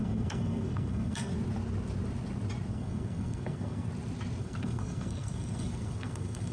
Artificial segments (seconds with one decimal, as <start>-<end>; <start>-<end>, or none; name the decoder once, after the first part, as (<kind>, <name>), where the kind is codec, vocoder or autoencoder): 0.0-1.3 (codec, SNAC); 2.7-3.9; 4.4-6.5